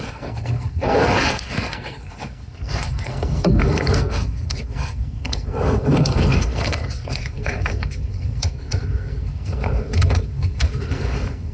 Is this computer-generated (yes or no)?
yes